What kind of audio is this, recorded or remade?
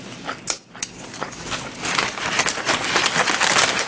recorded